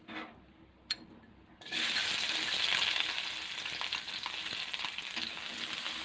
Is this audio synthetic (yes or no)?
no